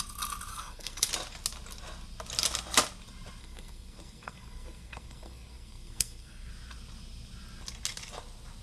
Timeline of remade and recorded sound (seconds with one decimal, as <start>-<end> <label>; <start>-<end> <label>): 0.0-0.5 recorded; 0.5-1.1 remade; 1.1-3.4 recorded; 3.4-6.5 remade; 6.5-8.6 recorded